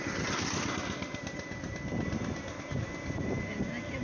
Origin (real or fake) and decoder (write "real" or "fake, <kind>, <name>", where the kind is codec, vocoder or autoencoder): real